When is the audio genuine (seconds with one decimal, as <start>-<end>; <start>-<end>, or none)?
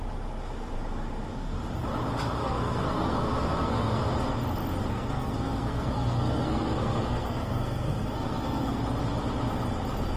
0.0-2.4; 4.0-4.9; 8.8-10.2